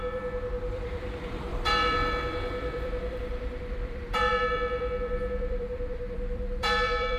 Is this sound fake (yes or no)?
yes